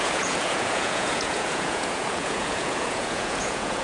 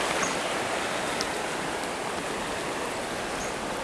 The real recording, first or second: second